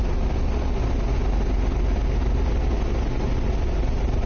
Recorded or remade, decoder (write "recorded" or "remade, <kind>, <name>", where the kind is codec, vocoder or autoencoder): recorded